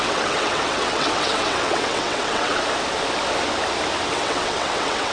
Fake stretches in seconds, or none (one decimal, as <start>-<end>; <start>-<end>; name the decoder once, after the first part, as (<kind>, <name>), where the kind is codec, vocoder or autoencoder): 0.0-2.5 (vocoder, WaveNeXt); 4.1-5.1